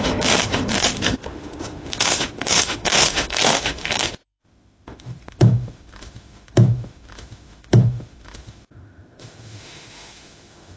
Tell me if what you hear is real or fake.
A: fake